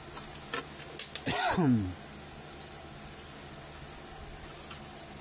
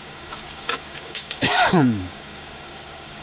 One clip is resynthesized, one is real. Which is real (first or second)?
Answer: first